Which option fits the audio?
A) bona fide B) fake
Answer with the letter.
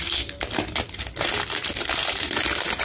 A